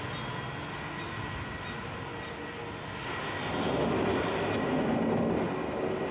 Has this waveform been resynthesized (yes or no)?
no